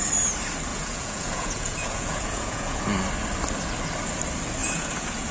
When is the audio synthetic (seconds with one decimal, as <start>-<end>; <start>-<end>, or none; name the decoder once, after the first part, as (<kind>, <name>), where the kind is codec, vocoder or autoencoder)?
0.7-2.8 (vocoder, Vocos); 4.6-5.3